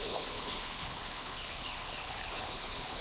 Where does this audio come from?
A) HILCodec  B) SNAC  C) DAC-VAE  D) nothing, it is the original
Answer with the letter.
A